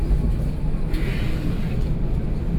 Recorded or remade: recorded